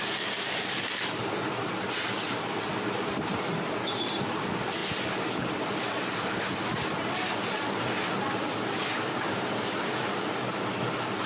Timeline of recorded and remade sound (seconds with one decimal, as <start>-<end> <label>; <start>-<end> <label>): 0.0-11.3 recorded